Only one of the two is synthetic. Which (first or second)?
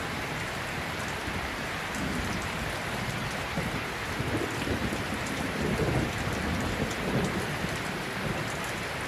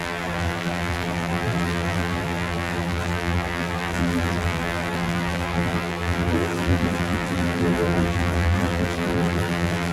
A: second